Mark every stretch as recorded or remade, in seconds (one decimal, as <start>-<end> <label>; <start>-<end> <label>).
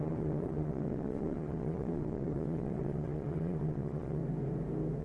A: 0.0-4.2 remade; 4.2-5.0 recorded